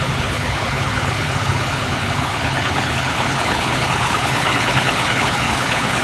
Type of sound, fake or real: fake